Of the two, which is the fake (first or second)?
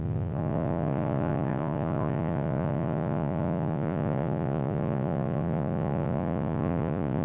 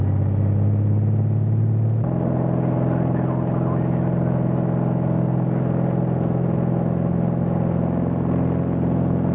first